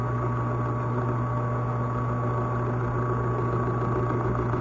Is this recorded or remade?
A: recorded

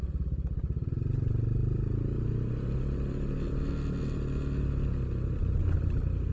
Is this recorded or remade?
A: recorded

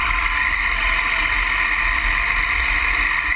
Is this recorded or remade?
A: recorded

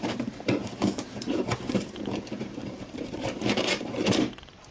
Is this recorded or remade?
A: remade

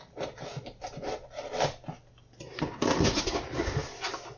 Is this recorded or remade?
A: recorded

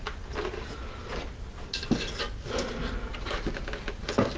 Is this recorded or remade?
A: recorded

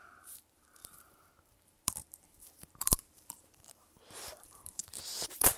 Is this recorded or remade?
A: remade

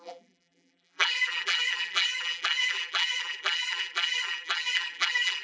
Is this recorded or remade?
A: remade